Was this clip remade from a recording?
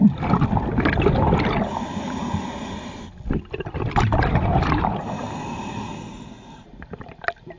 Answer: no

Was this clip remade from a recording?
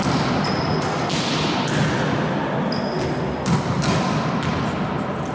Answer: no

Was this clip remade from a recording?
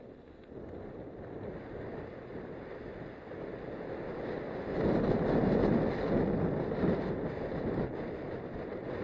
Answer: no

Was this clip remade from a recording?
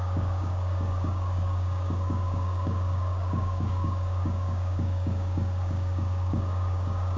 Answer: yes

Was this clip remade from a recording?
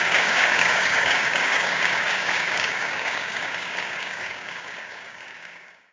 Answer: yes